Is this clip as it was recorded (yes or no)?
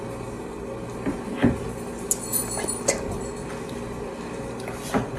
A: yes